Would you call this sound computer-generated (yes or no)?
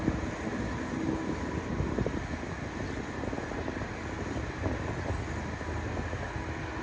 no